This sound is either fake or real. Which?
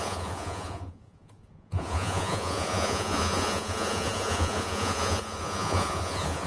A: fake